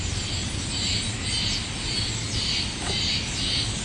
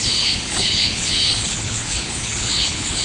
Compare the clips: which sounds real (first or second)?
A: first